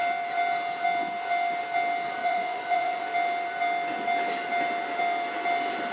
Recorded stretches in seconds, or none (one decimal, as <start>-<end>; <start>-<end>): 0.0-2.2; 3.0-5.9